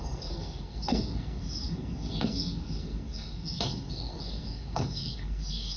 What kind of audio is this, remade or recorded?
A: remade